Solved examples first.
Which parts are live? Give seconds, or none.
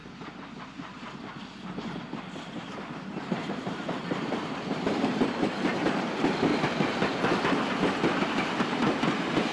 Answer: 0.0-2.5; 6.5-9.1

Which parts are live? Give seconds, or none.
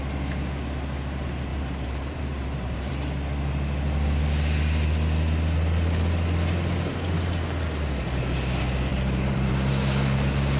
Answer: 0.0-1.5; 2.9-8.9; 9.5-10.6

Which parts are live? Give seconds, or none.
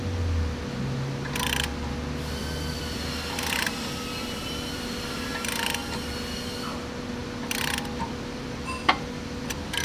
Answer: 0.0-2.4; 5.3-7.2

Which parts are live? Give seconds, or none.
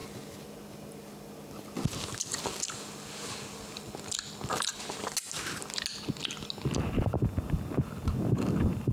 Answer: 0.0-8.9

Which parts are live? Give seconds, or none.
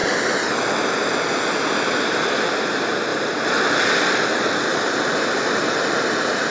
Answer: 0.0-3.1; 3.6-4.7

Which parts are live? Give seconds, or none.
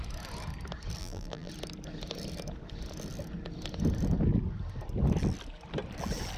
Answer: 0.0-1.0; 1.5-6.4